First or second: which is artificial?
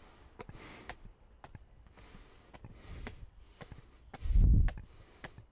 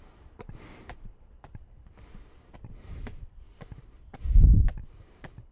second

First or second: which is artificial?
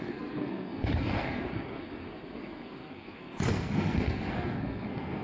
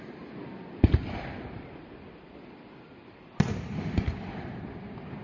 first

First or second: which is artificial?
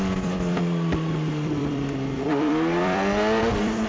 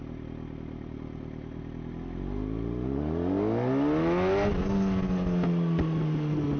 first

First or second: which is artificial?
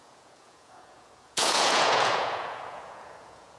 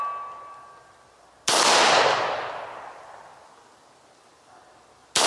first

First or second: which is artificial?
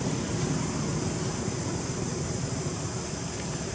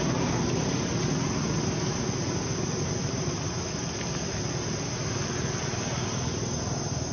first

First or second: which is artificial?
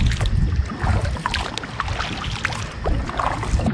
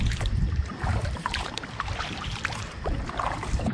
second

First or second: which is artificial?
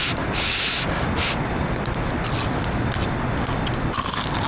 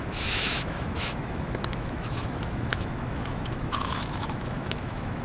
second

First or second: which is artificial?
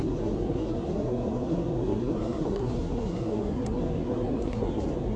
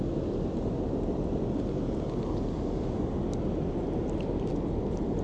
first